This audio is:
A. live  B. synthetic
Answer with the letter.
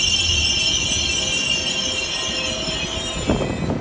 A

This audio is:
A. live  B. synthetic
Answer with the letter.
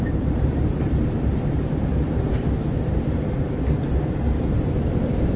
B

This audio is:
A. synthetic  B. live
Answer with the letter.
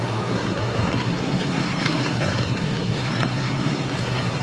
A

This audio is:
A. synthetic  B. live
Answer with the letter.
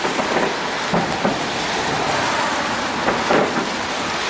B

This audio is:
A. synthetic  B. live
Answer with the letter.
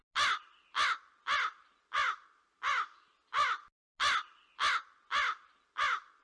B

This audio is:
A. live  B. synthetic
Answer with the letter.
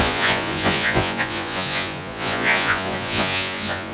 B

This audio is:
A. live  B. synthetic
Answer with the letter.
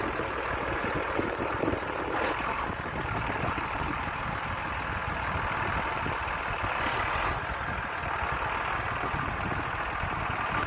A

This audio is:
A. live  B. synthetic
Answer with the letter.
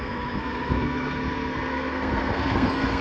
B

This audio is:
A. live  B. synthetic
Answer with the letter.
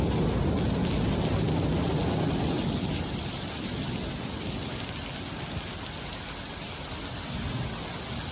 A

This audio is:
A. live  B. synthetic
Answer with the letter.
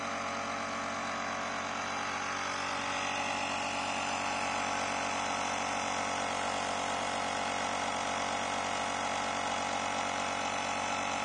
A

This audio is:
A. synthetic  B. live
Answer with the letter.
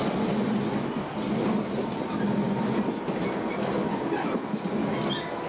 B